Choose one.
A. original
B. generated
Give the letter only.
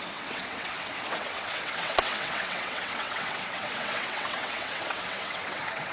B